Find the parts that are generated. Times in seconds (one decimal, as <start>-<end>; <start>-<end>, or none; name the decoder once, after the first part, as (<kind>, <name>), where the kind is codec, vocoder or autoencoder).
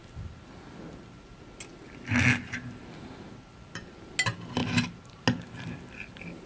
none